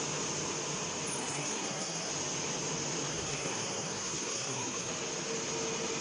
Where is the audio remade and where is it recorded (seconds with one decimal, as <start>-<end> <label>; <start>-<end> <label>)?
0.0-1.2 recorded; 1.2-2.1 remade; 2.1-3.1 recorded; 3.1-4.9 remade; 4.9-6.0 recorded